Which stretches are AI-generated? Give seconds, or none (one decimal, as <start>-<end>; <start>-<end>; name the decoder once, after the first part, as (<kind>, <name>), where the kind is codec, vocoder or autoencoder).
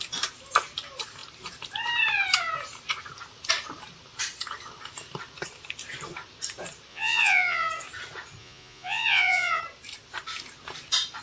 6.9-7.7 (vocoder, Vocos); 8.4-9.6